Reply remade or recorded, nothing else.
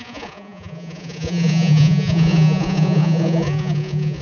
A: remade